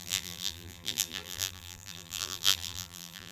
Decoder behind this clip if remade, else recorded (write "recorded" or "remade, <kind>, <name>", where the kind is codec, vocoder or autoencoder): remade, vocoder, BigVGAN v2